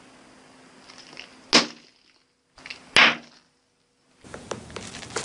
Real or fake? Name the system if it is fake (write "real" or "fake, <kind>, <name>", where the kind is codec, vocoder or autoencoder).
real